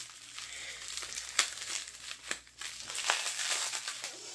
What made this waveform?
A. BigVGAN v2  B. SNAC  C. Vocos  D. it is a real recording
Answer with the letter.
D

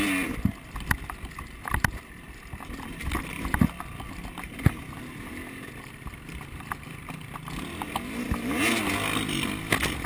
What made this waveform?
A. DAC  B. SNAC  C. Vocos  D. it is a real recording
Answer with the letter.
D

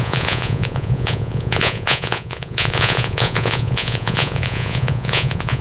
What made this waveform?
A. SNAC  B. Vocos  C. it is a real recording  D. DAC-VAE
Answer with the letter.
B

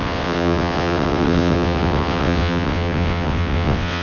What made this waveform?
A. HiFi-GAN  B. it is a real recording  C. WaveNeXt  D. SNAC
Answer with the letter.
C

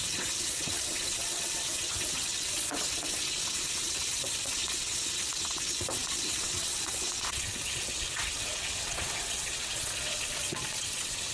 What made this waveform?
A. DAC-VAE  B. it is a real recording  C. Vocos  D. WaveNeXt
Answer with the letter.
D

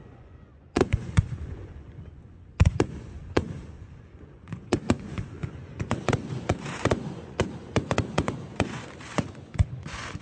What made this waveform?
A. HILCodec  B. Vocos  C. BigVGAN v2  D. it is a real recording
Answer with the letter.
B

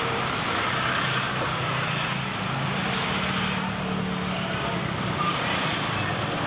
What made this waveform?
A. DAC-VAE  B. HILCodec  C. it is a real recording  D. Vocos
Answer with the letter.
C